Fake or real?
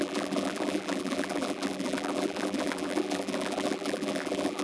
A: fake